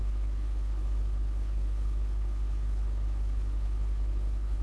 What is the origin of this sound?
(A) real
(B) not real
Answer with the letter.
B